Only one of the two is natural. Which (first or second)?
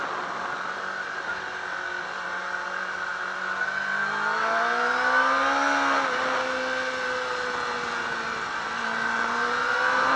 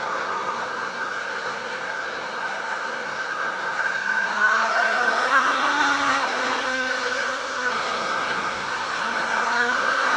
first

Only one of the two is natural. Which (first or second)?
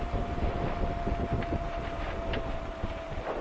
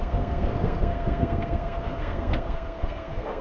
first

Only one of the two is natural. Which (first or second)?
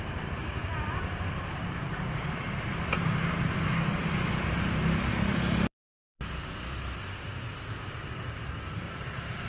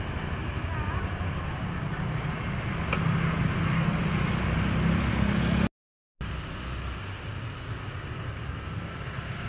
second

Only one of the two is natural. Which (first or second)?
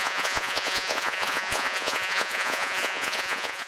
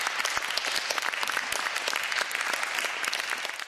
second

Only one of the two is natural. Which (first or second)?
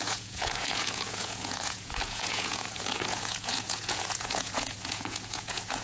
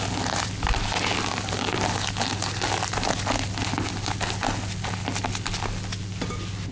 second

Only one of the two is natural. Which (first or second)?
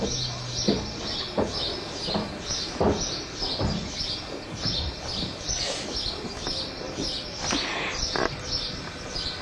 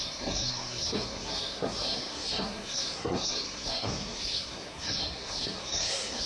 first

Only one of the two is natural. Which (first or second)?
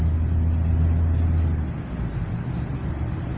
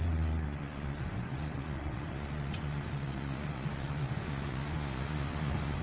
first